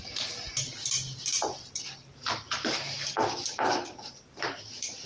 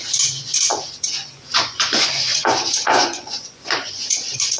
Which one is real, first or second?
first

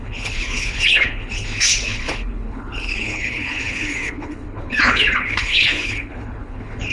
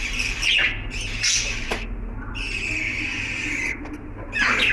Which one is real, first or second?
second